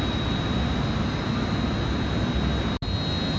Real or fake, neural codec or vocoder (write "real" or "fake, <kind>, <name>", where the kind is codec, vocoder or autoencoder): real